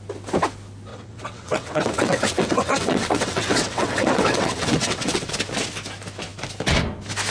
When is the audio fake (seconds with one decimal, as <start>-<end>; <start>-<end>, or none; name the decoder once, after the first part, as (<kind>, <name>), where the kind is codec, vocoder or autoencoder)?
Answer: 0.9-5.3 (vocoder, WaveNeXt)